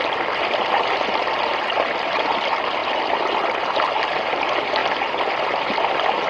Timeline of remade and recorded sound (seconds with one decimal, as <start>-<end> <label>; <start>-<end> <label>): 0.0-6.3 recorded